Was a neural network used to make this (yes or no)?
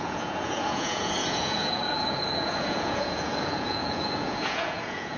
yes